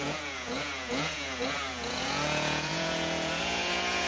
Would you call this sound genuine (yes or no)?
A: no